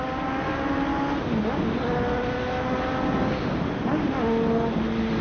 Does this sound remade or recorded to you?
recorded